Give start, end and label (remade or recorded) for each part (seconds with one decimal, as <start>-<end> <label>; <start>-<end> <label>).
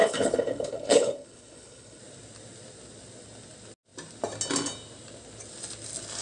0.0-2.0 remade; 2.0-6.2 recorded